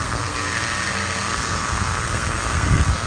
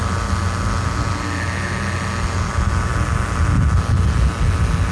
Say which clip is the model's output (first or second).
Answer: first